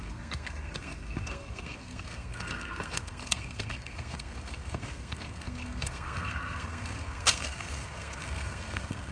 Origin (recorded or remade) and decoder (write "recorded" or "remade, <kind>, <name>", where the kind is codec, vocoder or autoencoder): remade, codec, SNAC